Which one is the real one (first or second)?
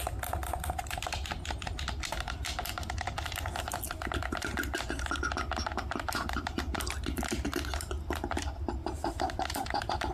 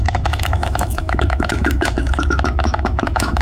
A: first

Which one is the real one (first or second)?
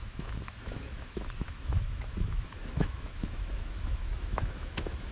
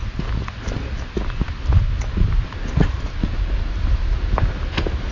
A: second